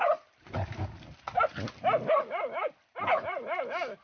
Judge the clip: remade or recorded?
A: recorded